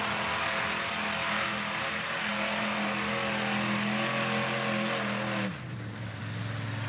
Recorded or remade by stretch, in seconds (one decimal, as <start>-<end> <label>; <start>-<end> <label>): 0.0-6.9 recorded